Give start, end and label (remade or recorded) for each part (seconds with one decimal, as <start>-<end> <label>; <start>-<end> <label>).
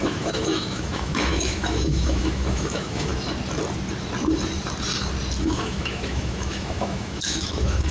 0.0-3.1 remade; 3.1-5.4 recorded; 5.4-7.9 remade